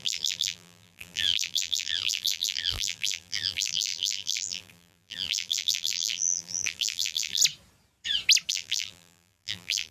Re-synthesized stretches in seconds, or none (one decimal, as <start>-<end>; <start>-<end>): 0.0-7.4; 8.5-9.9